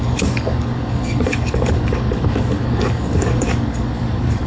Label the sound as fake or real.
fake